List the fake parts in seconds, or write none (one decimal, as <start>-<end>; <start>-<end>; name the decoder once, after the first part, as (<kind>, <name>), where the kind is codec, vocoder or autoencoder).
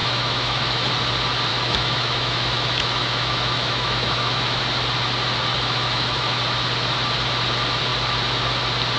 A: 0.0-0.9 (autoencoder, DAC-VAE); 1.5-4.6; 5.5-6.4